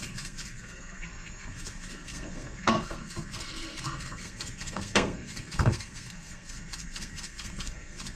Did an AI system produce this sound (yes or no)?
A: yes